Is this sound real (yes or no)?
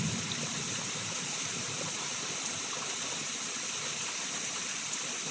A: no